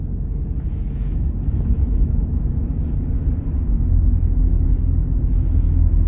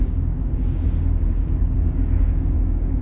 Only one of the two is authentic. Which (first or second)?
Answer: first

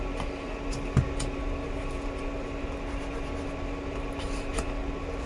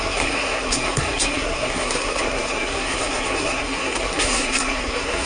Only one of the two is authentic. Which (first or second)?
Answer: first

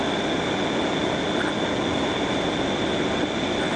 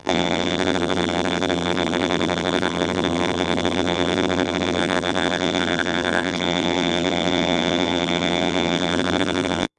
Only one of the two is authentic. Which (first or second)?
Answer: first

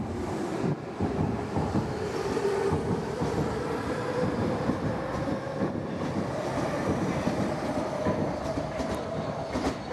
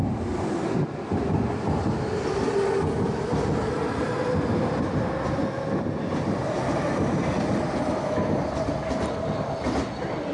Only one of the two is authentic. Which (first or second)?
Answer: second